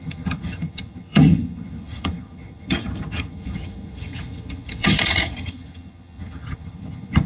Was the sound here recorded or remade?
remade